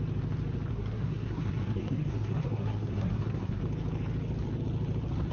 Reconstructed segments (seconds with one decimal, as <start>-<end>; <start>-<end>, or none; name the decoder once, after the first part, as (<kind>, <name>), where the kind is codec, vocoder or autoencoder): 0.7-3.6 (codec, SNAC)